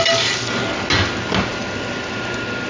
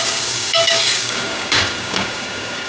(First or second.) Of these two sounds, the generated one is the second